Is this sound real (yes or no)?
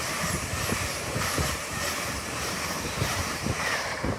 no